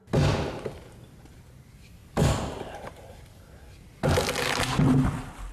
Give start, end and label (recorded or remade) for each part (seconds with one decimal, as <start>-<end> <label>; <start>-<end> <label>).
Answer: 0.0-2.0 recorded; 2.0-3.9 remade; 3.9-5.5 recorded